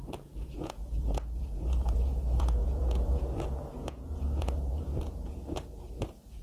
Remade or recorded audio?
remade